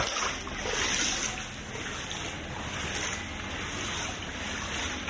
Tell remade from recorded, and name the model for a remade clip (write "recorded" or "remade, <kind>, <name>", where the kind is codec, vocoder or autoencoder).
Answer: recorded